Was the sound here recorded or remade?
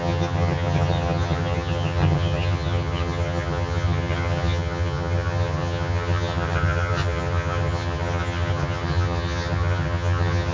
remade